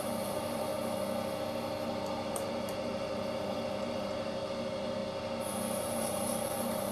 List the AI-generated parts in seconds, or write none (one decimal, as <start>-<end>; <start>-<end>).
0.0-0.7; 2.3-5.0; 5.8-6.9